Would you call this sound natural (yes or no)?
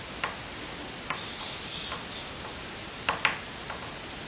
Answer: yes